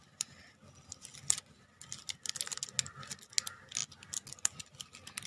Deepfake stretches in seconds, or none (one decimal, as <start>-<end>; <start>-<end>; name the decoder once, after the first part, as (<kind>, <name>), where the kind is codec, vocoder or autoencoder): none